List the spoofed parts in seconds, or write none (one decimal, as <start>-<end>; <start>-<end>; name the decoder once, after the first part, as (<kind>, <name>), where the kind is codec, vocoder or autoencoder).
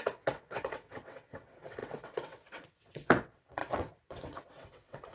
0.0-5.1 (vocoder, WaveNeXt)